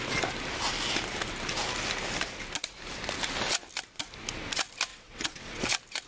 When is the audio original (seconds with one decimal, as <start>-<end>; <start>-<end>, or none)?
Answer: 0.0-4.9; 5.6-6.1